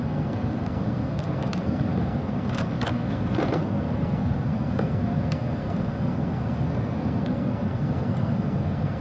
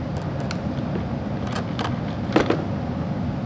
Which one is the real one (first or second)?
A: second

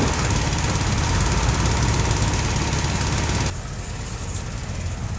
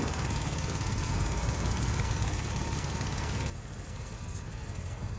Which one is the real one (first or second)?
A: first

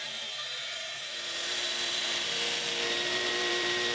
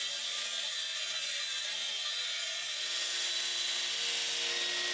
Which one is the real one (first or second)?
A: second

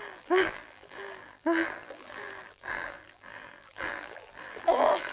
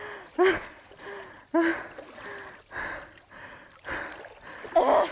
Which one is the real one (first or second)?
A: second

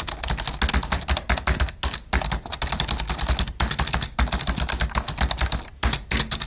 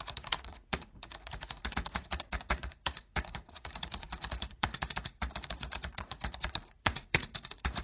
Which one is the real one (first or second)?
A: first